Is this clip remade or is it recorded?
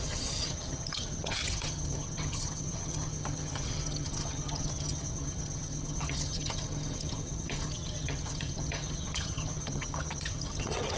remade